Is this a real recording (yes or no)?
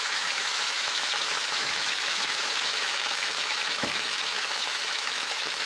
no